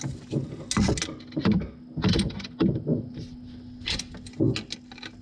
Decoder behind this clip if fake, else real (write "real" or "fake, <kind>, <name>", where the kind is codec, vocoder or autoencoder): real